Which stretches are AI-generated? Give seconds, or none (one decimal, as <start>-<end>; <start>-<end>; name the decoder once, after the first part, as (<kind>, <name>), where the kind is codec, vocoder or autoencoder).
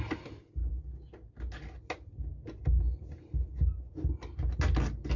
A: none